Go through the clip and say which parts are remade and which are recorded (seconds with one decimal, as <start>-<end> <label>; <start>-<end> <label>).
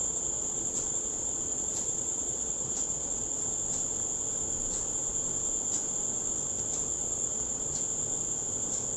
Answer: 0.0-3.5 remade; 3.5-6.9 recorded; 6.9-7.8 remade; 7.8-9.0 recorded